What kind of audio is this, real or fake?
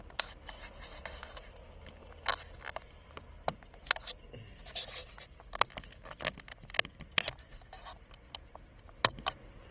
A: real